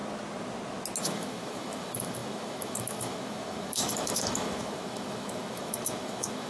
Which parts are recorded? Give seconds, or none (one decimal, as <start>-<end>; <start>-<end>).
0.0-1.0

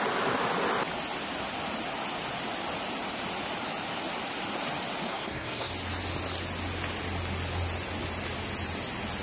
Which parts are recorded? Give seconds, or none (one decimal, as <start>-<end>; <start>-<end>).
0.0-5.1; 5.7-9.2

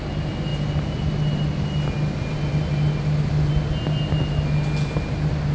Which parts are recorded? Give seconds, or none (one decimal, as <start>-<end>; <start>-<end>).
0.0-5.5

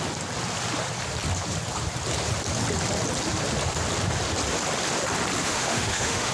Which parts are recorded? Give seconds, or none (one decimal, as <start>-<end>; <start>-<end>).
0.0-5.4

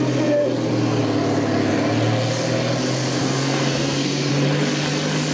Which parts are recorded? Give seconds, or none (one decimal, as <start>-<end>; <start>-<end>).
0.0-3.2; 4.3-5.3

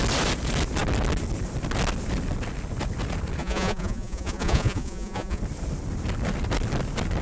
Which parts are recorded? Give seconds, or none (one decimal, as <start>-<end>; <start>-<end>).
0.0-3.4; 5.4-7.2